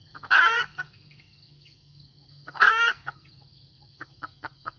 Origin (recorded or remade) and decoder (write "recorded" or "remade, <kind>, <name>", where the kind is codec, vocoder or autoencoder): remade, codec, SNAC